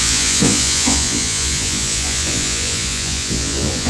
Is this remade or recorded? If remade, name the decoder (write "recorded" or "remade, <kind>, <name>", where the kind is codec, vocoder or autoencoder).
remade, vocoder, Vocos